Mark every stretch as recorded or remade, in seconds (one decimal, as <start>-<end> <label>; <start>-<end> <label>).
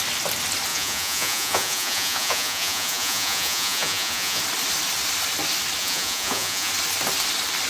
0.0-0.7 recorded; 0.7-4.4 remade; 4.4-5.8 recorded; 5.8-6.7 remade; 6.7-7.7 recorded